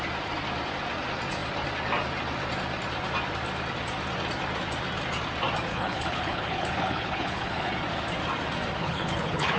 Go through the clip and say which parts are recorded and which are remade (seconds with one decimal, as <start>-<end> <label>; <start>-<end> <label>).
0.0-5.7 recorded; 5.7-7.7 remade; 7.7-8.8 recorded; 8.8-9.6 remade